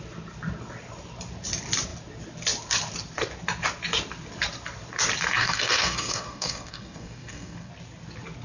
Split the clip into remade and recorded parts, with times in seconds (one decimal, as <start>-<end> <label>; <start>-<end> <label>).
0.0-5.4 recorded; 5.4-7.7 remade; 7.7-8.4 recorded